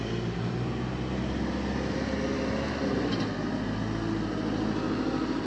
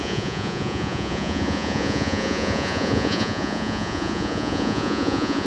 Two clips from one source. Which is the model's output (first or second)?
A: second